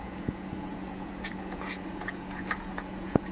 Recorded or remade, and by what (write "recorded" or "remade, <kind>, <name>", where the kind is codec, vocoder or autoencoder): remade, vocoder, Vocos